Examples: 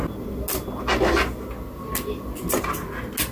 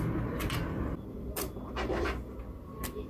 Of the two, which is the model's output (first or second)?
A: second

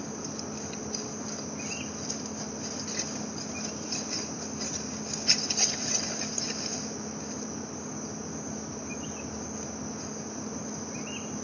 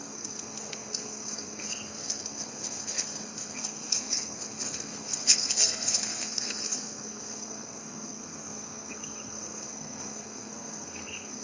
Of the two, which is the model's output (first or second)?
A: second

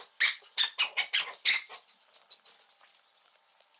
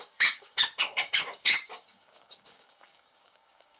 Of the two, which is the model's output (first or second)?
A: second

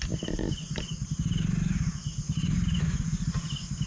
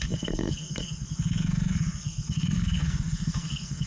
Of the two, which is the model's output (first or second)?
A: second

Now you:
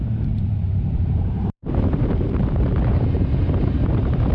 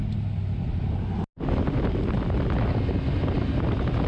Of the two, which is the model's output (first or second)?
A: first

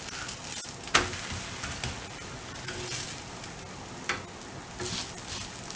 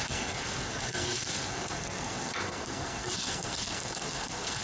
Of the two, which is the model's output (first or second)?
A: second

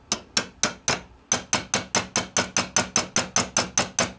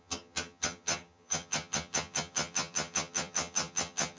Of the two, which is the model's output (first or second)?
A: second